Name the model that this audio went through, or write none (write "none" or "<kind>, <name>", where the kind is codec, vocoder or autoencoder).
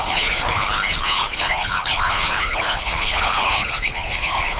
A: codec, HILCodec